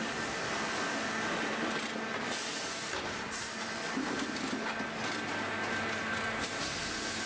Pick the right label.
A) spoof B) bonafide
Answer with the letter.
B